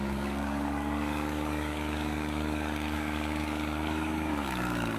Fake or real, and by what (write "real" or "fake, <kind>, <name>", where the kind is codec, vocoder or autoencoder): fake, codec, DAC